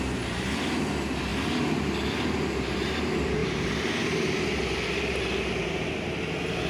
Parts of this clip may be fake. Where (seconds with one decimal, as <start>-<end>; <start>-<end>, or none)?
3.4-4.4